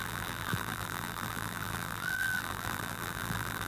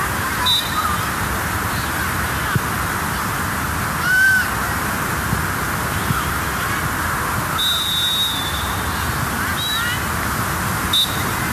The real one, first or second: second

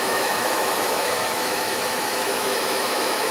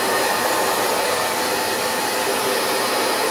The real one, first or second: second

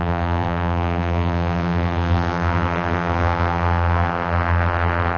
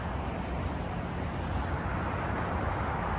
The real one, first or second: second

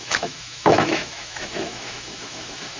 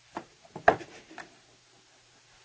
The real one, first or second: second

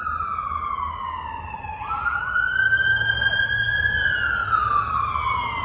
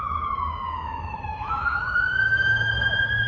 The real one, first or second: first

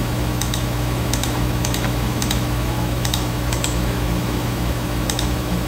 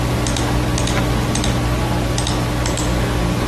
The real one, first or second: second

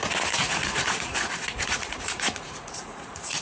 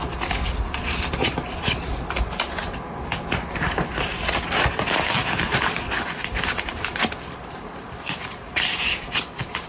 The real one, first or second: second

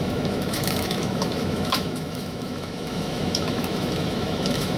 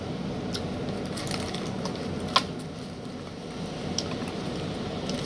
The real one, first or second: second